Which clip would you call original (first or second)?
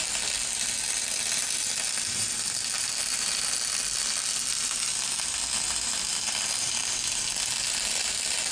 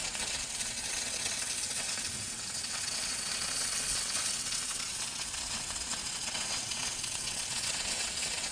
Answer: first